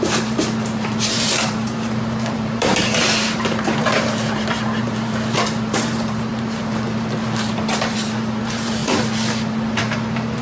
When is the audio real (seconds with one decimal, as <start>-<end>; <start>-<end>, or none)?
8.8-9.8